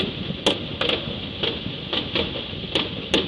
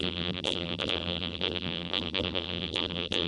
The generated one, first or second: second